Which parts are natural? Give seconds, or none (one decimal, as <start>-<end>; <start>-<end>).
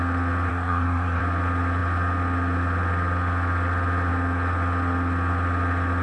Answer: 0.0-0.5; 1.2-6.0